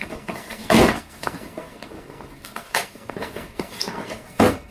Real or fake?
fake